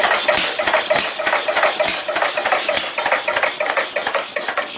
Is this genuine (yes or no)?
yes